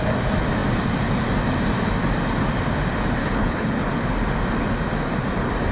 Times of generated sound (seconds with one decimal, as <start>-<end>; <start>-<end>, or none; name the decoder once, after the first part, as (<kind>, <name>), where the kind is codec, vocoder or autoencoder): 3.2-3.9 (codec, HILCodec)